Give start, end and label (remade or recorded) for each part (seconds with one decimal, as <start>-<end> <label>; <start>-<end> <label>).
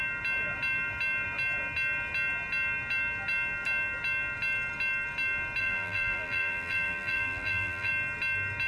0.0-5.6 recorded; 5.6-7.9 remade; 7.9-8.7 recorded